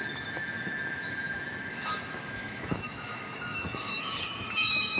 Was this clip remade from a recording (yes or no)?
yes